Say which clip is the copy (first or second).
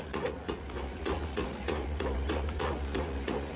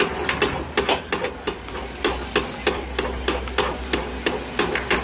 first